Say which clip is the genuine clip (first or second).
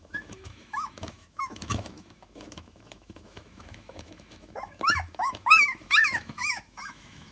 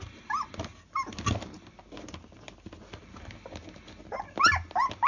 second